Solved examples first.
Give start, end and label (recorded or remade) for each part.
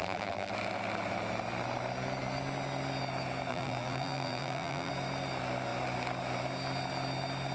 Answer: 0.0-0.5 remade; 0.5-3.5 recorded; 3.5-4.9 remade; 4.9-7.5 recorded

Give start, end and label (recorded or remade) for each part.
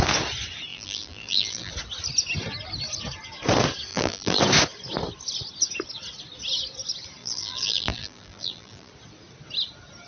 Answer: 0.0-0.7 recorded; 0.7-1.7 remade; 1.7-3.9 recorded; 3.9-4.4 remade; 4.4-7.2 recorded; 7.2-8.9 remade; 8.9-10.1 recorded